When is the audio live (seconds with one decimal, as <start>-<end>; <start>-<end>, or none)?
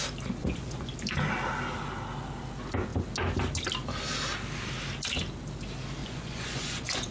0.0-0.4; 0.9-6.0